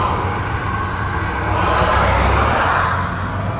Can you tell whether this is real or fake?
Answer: real